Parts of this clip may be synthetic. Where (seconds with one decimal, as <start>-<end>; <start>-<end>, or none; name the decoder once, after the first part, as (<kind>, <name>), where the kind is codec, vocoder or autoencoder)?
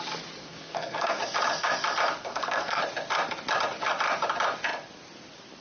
0.4-1.2 (codec, SNAC); 2.2-2.8